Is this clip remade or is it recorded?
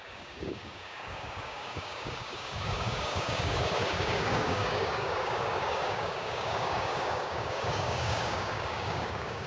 remade